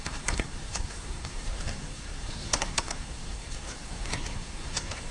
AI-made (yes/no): yes